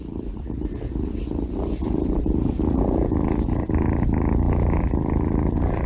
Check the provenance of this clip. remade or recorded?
recorded